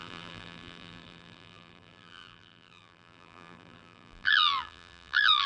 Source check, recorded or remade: remade